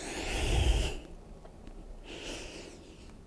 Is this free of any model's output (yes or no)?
yes